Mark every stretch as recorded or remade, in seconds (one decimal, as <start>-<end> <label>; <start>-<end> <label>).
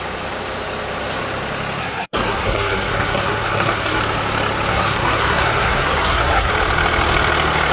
0.0-1.8 recorded; 1.8-4.0 remade; 4.0-4.7 recorded; 4.7-6.5 remade; 6.5-7.7 recorded